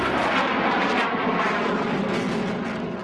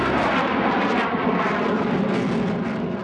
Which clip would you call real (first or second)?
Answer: first